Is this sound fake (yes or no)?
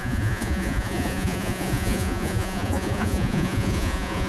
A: yes